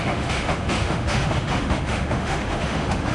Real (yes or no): no